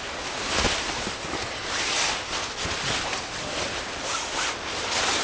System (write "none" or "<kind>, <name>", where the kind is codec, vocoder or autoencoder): none